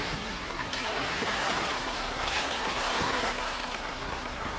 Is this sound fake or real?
fake